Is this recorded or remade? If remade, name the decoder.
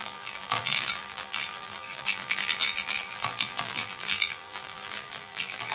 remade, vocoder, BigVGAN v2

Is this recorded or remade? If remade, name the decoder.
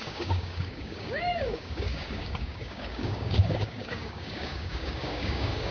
remade, codec, DAC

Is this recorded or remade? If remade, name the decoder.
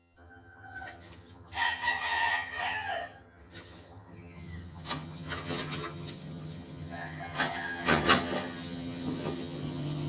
remade, vocoder, HiFi-GAN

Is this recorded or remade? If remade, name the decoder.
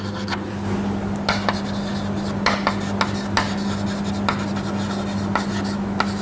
recorded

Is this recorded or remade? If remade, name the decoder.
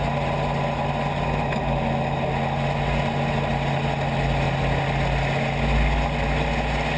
recorded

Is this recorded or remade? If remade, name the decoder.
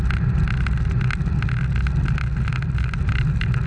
recorded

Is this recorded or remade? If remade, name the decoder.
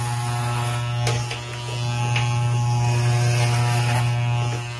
recorded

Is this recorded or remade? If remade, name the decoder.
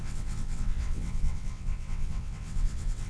remade, vocoder, WaveNeXt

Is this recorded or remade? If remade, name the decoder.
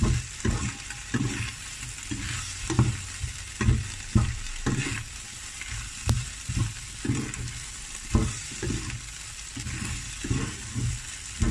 recorded